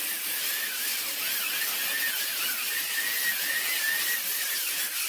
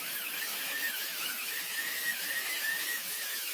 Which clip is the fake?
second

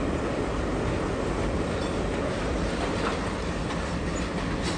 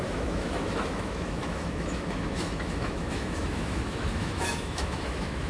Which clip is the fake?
second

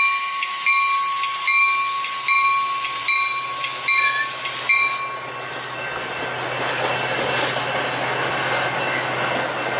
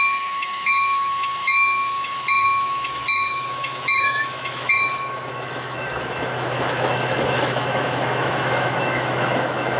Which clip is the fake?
second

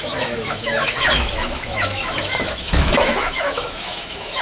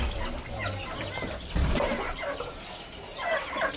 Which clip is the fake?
first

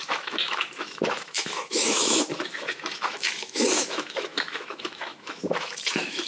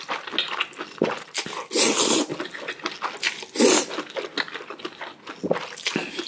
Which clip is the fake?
first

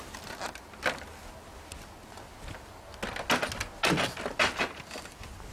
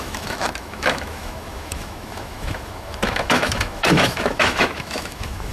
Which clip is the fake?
second